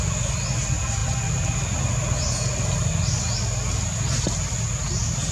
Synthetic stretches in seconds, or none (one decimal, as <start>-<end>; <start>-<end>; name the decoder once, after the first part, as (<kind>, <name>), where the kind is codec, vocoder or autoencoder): none